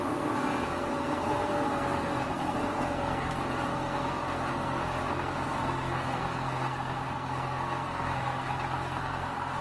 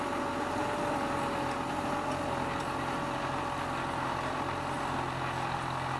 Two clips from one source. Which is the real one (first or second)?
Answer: second